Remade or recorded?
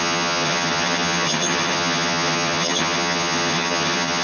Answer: remade